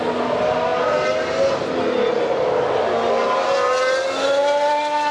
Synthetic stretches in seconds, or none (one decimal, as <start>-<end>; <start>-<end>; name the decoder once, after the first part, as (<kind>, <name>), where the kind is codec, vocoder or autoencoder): none